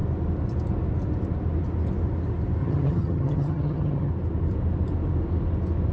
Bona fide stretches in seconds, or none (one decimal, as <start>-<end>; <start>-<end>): 0.0-2.6; 4.1-5.9